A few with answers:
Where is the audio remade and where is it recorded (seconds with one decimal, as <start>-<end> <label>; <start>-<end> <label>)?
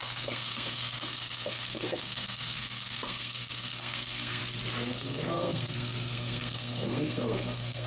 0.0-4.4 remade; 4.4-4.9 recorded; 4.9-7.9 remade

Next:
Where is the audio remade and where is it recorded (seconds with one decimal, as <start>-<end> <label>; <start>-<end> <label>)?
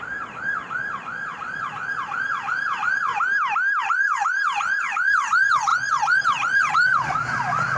0.0-3.1 remade; 3.1-3.8 recorded; 3.8-7.8 remade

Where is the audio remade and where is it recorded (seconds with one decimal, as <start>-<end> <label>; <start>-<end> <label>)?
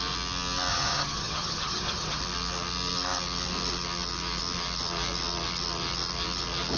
0.0-0.7 recorded; 0.7-2.2 remade; 2.2-6.8 recorded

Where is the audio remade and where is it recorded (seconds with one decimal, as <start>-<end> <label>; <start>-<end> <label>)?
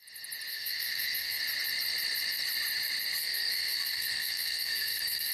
0.0-0.5 recorded; 0.5-1.4 remade; 1.4-3.2 recorded; 3.2-5.3 remade